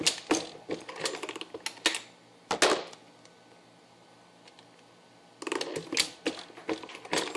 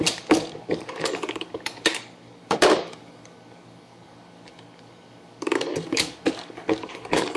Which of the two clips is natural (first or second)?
first